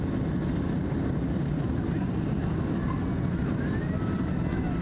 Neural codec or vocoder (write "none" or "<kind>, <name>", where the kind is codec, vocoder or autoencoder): none